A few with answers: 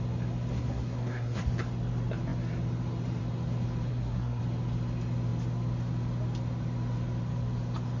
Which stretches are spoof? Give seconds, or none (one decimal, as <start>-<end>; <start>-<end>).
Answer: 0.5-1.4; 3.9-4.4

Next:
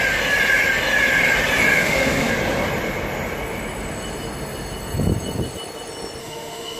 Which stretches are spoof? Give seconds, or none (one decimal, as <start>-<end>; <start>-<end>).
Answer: 1.7-2.3; 6.2-6.8

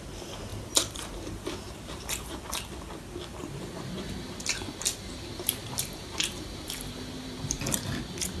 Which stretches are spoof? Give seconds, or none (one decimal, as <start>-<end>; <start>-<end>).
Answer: 0.5-2.4; 3.4-7.6

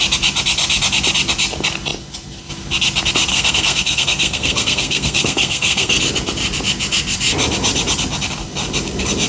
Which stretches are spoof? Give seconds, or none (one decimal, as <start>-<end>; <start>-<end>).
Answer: 3.3-6.0